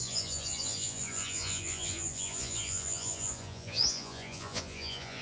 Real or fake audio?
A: fake